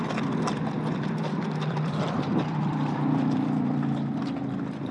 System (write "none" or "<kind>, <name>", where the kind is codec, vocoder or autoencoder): vocoder, BigVGAN v2